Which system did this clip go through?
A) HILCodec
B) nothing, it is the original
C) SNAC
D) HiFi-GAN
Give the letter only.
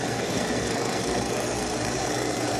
C